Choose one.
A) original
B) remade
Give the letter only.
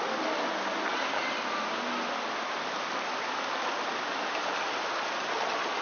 A